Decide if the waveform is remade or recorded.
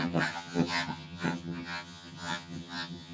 remade